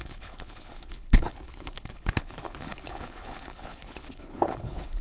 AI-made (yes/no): yes